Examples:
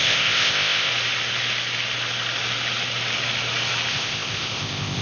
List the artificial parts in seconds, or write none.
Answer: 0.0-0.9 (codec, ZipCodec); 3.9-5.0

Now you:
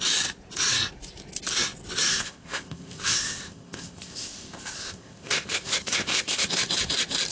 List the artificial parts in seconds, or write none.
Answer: 2.1-6.5 (codec, ZipCodec)

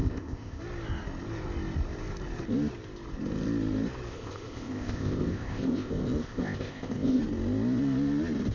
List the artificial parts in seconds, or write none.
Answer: 0.0-0.6 (codec, ZipCodec); 4.1-7.2

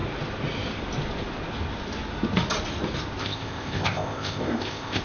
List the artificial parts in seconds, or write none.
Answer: 3.2-5.0 (codec, ZipCodec)